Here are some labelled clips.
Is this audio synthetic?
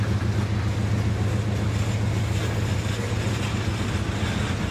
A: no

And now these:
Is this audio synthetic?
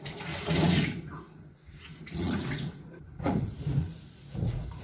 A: yes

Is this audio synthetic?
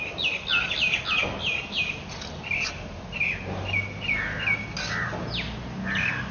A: no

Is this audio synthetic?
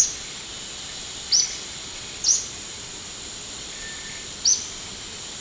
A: no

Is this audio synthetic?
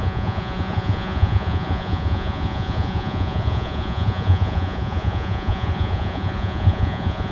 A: yes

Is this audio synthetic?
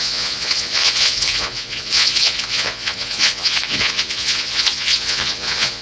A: yes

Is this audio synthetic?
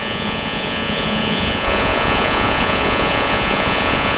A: yes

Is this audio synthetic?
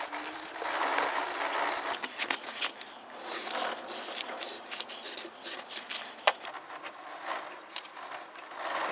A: no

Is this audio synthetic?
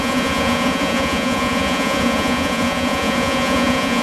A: yes